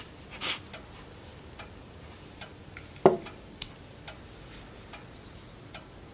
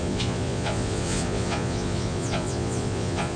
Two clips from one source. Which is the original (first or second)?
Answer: first